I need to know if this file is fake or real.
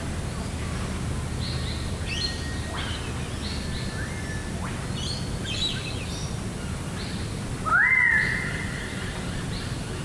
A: real